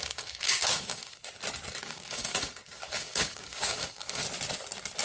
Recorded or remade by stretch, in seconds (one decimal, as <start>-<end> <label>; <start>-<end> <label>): 0.0-1.2 remade; 1.2-1.8 recorded; 1.8-4.2 remade; 4.2-5.0 recorded